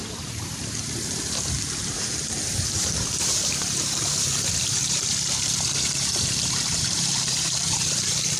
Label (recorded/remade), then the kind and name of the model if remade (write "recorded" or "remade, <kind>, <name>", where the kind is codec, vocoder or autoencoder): remade, vocoder, BigVGAN v2